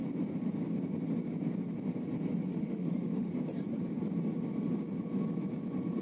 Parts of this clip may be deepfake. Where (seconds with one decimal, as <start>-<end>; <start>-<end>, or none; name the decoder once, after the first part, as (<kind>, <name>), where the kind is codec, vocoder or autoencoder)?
2.5-3.3 (autoencoder, DAC-VAE)